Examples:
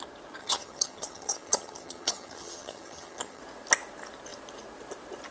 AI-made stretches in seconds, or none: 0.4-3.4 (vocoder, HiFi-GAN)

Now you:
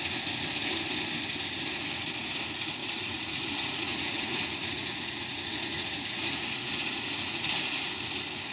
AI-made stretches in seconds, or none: 2.8-7.9 (vocoder, Vocos)

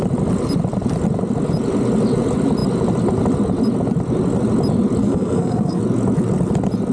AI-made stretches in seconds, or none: 5.0-5.8 (codec, SNAC)

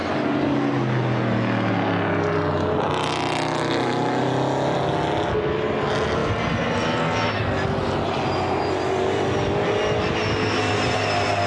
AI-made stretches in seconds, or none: none

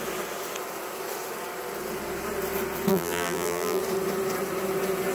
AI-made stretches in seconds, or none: 2.9-3.8 (vocoder, BigVGAN v2)

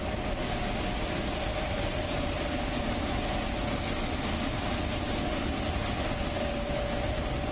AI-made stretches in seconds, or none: none

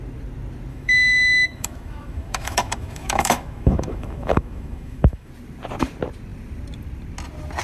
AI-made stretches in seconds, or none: 0.7-5.3 (autoencoder, DAC-VAE)